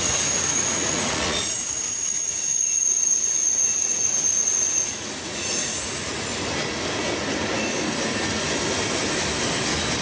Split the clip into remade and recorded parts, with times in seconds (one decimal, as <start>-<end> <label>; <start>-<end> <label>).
0.0-6.3 remade; 6.3-10.0 recorded